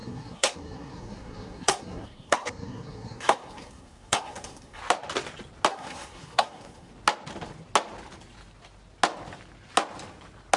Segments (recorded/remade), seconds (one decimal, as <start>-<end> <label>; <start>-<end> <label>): 0.0-4.8 remade; 4.8-5.7 recorded; 5.7-6.9 remade; 6.9-10.6 recorded